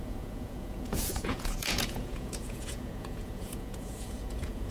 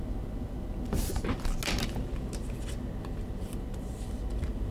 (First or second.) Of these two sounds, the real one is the second